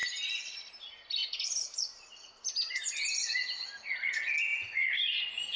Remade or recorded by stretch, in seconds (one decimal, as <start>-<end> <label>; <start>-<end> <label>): 0.0-5.6 recorded